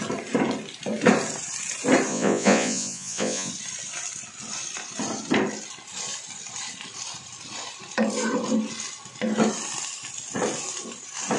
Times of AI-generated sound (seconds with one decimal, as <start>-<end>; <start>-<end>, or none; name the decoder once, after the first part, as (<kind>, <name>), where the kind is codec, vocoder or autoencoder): 2.1-3.5 (vocoder, Vocos)